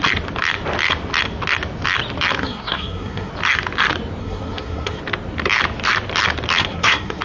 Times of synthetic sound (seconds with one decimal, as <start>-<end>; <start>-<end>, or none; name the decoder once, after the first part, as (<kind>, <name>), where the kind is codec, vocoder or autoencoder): 2.4-3.3 (codec, SNAC); 4.2-5.0; 6.6-7.2

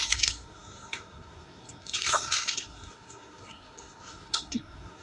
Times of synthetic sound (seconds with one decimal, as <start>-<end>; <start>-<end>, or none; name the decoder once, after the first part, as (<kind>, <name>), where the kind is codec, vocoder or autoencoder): 0.0-5.0 (codec, SNAC)

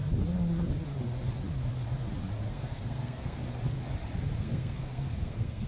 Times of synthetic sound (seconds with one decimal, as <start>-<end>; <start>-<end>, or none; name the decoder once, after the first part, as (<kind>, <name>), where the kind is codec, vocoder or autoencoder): 2.5-3.4 (codec, SNAC); 4.4-5.7